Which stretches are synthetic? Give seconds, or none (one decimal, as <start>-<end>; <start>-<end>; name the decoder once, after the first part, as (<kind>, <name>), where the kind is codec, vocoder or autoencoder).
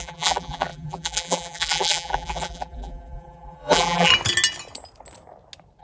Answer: 0.0-4.1 (vocoder, BigVGAN v2)